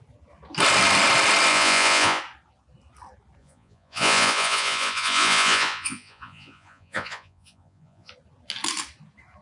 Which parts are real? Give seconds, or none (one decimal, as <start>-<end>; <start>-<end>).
0.0-1.5; 2.2-3.4; 8.1-9.4